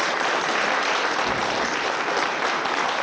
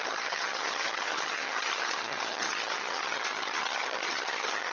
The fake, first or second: second